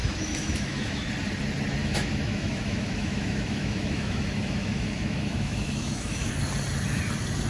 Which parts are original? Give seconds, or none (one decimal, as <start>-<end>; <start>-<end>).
1.1-1.8; 6.3-7.5